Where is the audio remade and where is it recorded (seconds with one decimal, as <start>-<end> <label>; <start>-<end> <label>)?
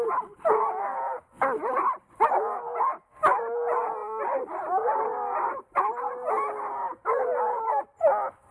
0.0-4.0 recorded; 4.0-5.6 remade; 5.6-7.3 recorded; 7.3-7.8 remade; 7.8-8.5 recorded